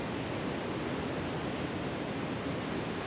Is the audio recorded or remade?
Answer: recorded